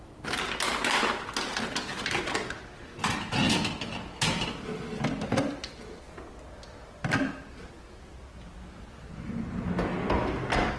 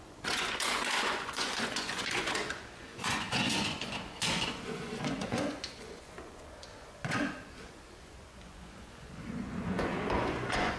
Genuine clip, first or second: first